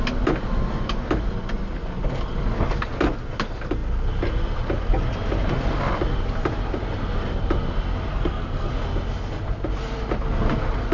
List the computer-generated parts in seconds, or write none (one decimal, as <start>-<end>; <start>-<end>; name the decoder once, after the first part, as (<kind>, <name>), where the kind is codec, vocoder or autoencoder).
8.1-8.7 (codec, SNAC)